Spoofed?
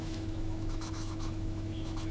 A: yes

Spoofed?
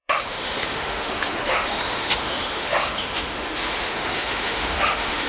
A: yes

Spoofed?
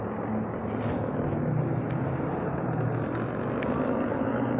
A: no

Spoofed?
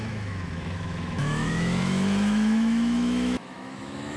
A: yes